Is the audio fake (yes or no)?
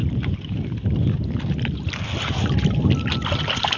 no